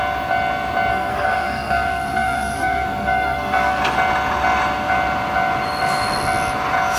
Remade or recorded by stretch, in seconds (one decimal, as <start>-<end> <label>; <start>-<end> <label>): 0.0-0.9 recorded; 0.9-3.8 remade; 3.8-7.0 recorded